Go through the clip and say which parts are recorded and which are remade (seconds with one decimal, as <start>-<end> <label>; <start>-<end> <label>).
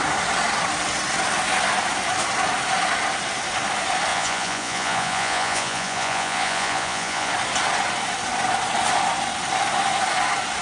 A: 0.0-4.1 recorded; 4.1-7.3 remade; 7.3-10.6 recorded